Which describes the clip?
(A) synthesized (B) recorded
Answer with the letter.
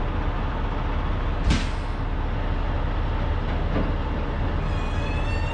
B